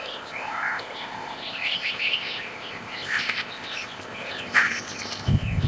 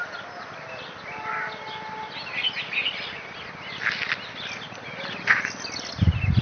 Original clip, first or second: second